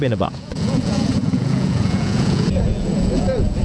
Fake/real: fake